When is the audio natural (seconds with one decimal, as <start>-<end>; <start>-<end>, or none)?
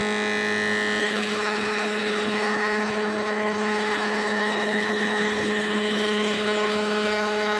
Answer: 0.0-1.0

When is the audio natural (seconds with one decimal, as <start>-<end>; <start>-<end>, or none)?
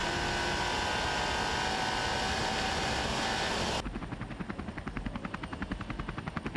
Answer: 0.0-6.6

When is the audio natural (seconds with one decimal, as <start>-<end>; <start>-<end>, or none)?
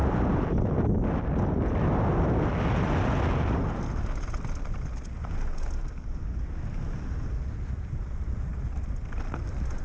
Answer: 0.0-9.8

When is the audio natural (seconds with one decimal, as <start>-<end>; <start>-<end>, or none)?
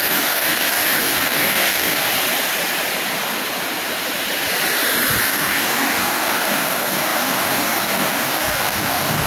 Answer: 2.1-5.2